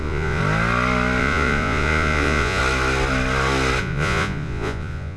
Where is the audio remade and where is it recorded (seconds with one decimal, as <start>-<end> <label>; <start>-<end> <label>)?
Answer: 0.0-0.4 remade; 0.4-1.2 recorded; 1.2-2.6 remade; 2.6-3.8 recorded; 3.8-5.2 remade